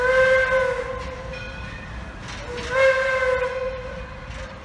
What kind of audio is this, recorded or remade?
recorded